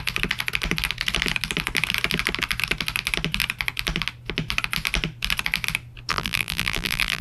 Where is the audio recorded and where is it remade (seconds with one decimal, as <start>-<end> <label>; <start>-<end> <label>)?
0.0-6.1 recorded; 6.1-7.2 remade

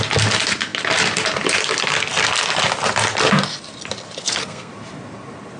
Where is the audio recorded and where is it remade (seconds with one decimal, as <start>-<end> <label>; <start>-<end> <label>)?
0.0-4.2 recorded; 4.2-4.7 remade; 4.7-5.6 recorded